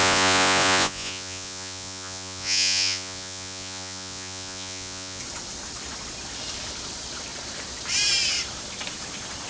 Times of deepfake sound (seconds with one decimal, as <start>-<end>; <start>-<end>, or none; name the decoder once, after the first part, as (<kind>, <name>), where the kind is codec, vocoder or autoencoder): 0.0-5.2 (vocoder, Vocos)